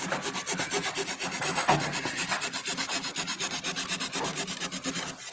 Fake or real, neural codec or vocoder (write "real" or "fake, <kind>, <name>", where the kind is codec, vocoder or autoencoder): real